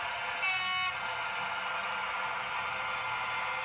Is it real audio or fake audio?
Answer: real